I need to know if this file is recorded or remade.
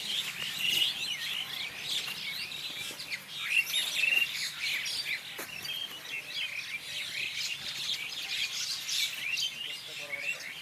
recorded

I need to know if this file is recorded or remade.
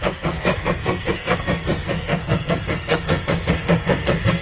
remade